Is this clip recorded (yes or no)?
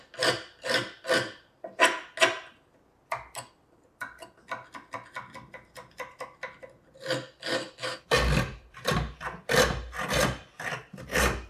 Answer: yes